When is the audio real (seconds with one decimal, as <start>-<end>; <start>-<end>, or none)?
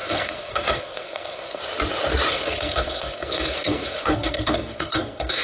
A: 1.6-2.3